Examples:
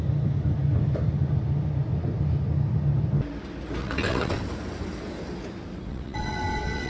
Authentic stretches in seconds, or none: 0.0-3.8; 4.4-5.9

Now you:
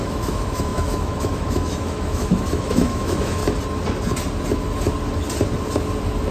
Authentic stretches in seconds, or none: 3.4-6.3